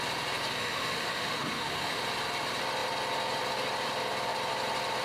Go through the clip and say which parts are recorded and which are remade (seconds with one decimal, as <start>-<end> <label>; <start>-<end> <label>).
0.0-0.6 recorded; 0.6-2.0 remade; 2.0-5.0 recorded